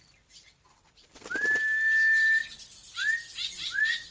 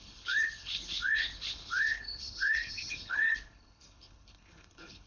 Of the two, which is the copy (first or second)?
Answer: second